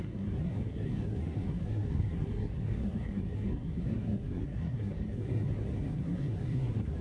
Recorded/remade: remade